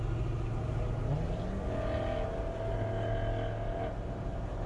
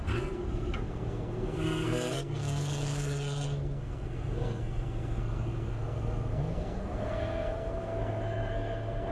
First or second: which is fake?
second